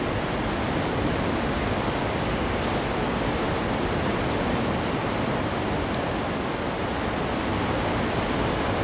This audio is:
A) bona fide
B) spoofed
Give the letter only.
A